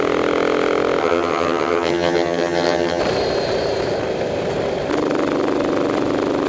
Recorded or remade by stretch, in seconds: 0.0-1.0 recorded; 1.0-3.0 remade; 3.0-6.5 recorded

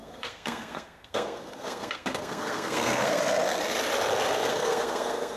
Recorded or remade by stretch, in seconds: 0.0-3.2 remade; 3.2-4.5 recorded; 4.5-5.4 remade

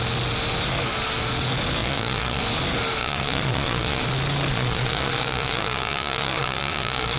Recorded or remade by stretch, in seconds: 0.0-1.8 recorded; 1.8-2.4 remade; 2.4-3.0 recorded; 3.0-4.0 remade; 4.0-4.5 recorded; 4.5-7.2 remade

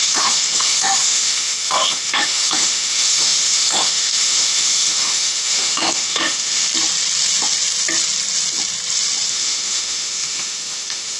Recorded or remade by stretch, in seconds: 0.0-6.7 remade; 6.7-9.3 recorded; 9.3-11.2 remade

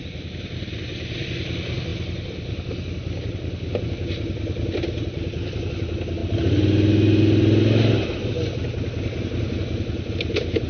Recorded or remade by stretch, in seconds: 0.0-10.7 recorded

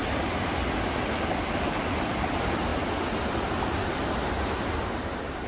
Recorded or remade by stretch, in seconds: 0.0-5.5 recorded

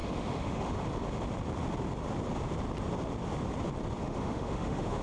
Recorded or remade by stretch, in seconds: 0.0-0.8 remade; 0.8-4.0 recorded; 4.0-5.0 remade